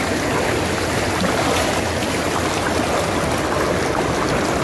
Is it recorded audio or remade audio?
recorded